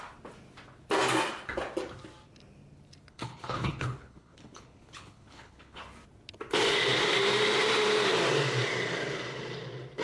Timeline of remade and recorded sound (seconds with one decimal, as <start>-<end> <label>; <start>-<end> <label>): 0.0-3.1 recorded; 3.1-5.8 remade; 5.8-10.0 recorded